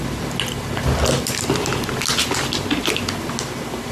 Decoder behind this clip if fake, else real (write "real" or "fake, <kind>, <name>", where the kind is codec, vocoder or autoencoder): real